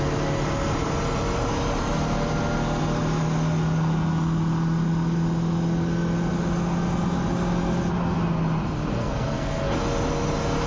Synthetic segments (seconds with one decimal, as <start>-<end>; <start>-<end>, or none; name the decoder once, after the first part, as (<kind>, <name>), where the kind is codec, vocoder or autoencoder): 9.0-9.6 (codec, SNAC)